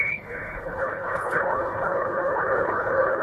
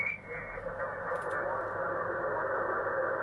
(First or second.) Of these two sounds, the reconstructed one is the first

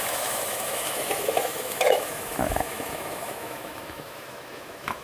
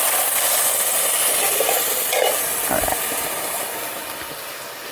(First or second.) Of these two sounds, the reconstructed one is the first